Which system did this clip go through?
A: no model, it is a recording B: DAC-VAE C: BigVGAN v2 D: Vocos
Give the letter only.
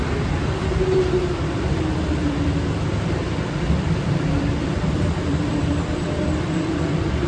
C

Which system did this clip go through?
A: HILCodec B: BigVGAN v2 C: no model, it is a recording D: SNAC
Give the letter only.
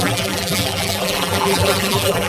B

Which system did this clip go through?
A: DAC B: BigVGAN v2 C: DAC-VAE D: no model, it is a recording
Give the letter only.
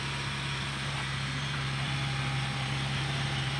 B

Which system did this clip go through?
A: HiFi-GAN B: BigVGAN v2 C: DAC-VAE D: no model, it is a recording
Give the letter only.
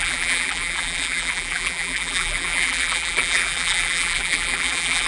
B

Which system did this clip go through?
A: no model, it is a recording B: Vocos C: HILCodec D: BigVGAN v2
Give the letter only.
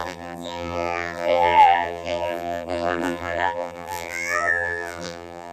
D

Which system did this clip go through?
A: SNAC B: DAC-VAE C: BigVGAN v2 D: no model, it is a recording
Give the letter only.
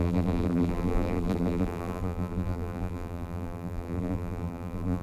C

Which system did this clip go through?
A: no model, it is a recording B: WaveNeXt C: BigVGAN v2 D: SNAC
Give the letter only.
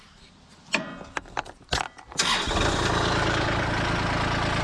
A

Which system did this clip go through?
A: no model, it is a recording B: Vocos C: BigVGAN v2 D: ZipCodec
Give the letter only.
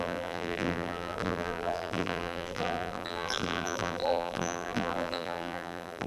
C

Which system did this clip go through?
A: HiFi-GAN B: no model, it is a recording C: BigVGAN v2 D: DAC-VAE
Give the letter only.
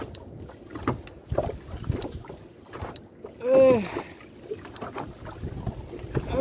B